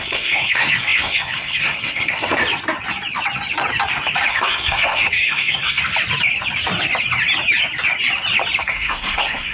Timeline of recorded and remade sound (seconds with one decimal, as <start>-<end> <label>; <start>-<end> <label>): 0.0-2.4 remade; 2.4-4.3 recorded; 4.3-5.8 remade; 5.8-8.6 recorded; 8.6-9.5 remade